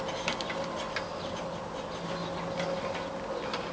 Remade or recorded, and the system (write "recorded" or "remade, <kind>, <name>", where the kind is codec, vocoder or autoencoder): recorded